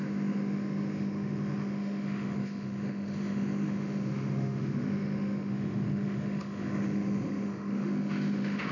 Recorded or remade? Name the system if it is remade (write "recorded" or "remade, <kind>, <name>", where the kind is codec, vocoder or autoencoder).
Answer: remade, autoencoder, DAC-VAE